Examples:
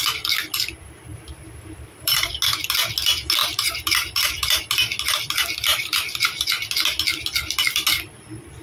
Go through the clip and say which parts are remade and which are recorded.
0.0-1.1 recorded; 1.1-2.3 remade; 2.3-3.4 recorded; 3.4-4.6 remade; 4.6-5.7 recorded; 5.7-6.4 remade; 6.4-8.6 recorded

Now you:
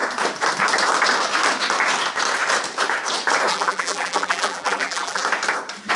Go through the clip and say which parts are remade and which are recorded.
0.0-3.5 recorded; 3.5-5.2 remade; 5.2-6.0 recorded

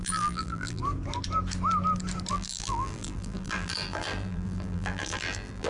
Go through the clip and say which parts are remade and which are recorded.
0.0-0.8 remade; 0.8-2.3 recorded; 2.3-5.7 remade

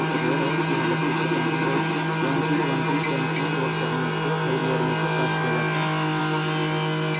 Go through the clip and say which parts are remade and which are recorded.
0.0-7.2 recorded

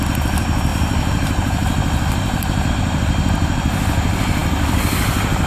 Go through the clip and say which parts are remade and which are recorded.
0.0-5.5 recorded

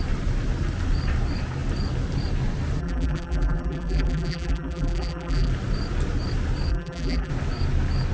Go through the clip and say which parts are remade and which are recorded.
0.0-2.8 recorded; 2.8-5.5 remade; 5.5-6.7 recorded; 6.7-7.3 remade; 7.3-8.1 recorded

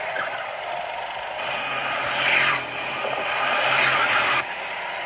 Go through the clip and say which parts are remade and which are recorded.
0.0-1.8 recorded; 1.8-4.6 remade; 4.6-5.1 recorded